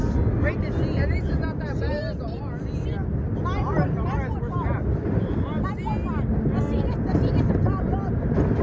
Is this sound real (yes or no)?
yes